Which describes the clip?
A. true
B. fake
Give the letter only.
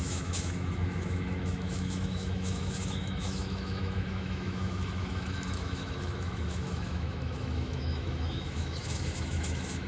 B